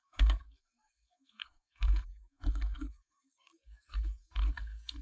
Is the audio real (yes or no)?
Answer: no